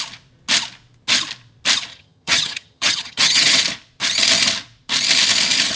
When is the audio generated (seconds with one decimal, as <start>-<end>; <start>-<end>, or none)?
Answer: 1.9-3.6